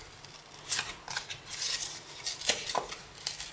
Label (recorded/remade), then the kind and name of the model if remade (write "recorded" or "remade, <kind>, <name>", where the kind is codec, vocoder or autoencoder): recorded